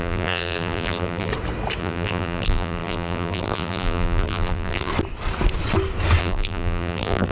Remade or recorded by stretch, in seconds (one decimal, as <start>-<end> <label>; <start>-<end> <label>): 0.0-1.3 remade; 1.3-1.8 recorded; 1.8-4.9 remade; 4.9-6.2 recorded; 6.2-7.3 remade

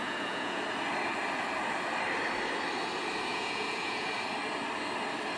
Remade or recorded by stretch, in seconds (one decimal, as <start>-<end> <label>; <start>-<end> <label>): 0.0-0.6 remade; 0.6-3.3 recorded; 3.3-4.1 remade; 4.1-5.4 recorded

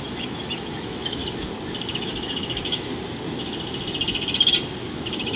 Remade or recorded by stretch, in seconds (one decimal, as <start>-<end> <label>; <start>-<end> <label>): 0.0-1.2 remade; 1.2-1.9 recorded; 1.9-2.9 remade; 2.9-4.9 recorded; 4.9-5.4 remade

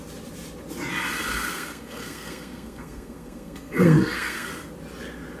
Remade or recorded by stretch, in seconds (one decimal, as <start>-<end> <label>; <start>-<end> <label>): 0.0-1.3 recorded; 1.3-4.5 remade; 4.5-5.4 recorded

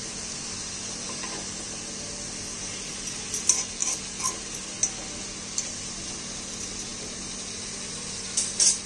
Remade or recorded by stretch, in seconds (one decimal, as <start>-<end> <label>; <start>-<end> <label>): 0.0-8.9 recorded

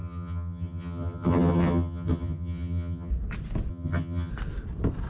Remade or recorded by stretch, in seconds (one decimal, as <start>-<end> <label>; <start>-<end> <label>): 0.0-3.1 remade; 3.1-3.7 recorded; 3.7-4.3 remade; 4.3-5.1 recorded